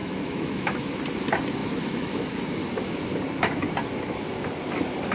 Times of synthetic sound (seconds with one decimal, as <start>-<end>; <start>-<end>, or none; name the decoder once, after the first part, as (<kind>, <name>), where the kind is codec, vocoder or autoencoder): 0.0-1.0 (autoencoder, DAC-VAE); 1.6-2.4

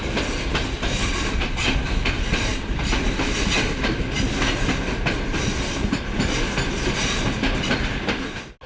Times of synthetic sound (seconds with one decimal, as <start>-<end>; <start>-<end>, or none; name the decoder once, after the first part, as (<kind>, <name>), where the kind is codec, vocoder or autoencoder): none